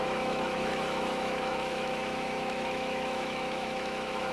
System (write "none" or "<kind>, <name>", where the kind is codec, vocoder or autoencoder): autoencoder, DAC-VAE